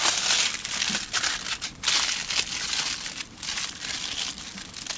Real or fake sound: real